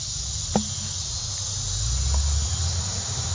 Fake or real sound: real